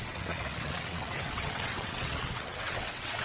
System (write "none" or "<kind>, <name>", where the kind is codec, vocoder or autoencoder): vocoder, WaveNeXt